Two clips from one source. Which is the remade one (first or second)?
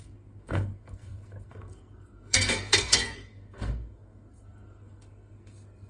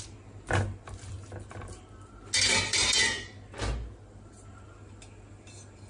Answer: first